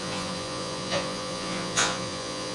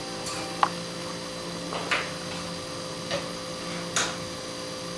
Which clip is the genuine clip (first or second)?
second